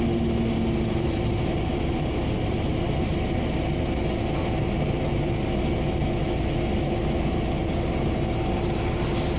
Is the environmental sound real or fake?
real